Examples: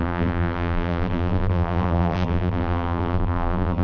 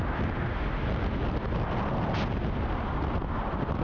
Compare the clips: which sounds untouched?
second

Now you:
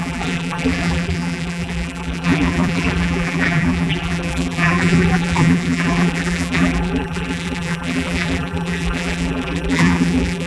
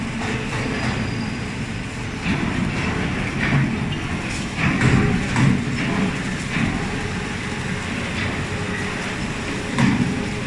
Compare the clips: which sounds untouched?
second